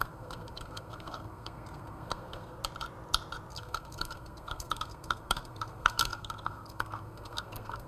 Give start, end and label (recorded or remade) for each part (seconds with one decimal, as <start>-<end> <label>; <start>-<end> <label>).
0.0-2.6 remade; 2.6-3.5 recorded; 3.5-7.9 remade